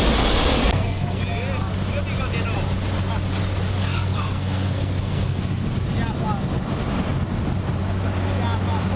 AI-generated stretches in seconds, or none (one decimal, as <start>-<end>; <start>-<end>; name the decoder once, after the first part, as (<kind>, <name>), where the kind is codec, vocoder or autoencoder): 0.6-1.2 (codec, SNAC); 3.8-5.4